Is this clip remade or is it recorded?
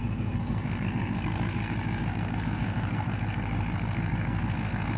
remade